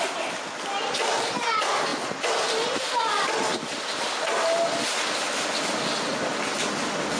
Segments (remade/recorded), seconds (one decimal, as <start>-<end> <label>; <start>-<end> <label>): 0.0-7.2 recorded